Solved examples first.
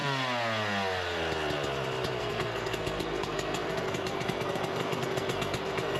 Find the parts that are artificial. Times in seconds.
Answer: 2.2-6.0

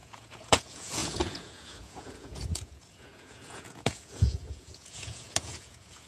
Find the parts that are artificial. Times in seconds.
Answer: 0.0-6.1